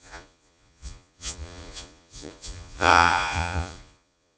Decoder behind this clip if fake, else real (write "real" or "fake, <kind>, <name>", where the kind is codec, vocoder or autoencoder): fake, vocoder, Vocos